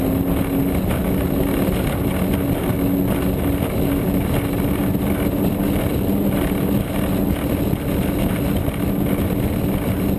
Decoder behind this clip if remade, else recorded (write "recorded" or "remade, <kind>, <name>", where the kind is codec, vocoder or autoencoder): recorded